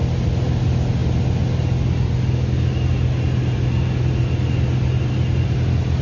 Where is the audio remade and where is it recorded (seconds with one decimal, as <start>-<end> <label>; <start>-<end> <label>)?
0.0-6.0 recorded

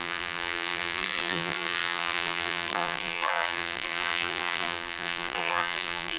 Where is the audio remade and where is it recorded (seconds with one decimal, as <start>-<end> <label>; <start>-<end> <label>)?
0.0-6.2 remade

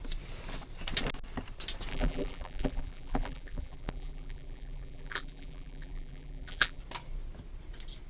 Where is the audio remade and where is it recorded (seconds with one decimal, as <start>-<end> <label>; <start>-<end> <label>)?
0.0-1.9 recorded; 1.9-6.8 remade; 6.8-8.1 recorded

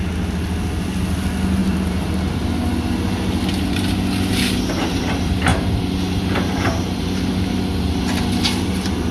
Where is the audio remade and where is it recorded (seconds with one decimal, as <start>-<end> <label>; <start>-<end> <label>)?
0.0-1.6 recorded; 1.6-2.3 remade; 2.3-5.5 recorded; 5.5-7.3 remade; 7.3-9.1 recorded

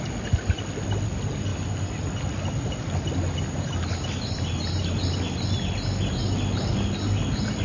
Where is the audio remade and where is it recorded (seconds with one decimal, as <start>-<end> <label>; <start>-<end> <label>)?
0.0-7.6 recorded

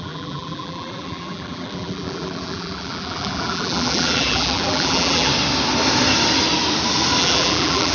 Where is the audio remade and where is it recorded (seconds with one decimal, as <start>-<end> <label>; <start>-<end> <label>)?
0.0-5.3 remade; 5.3-7.2 recorded; 7.2-7.9 remade

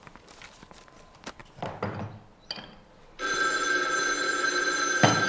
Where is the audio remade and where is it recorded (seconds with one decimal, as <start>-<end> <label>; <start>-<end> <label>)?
0.0-5.3 recorded

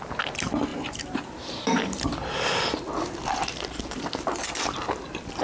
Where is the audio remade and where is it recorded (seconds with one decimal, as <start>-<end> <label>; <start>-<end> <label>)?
0.0-0.7 recorded; 0.7-2.6 remade; 2.6-3.4 recorded; 3.4-4.1 remade; 4.1-5.4 recorded